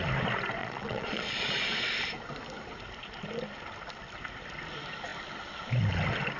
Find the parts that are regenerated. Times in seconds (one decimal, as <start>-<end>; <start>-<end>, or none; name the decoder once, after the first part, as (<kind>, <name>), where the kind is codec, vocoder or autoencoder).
0.6-1.6 (vocoder, Vocos)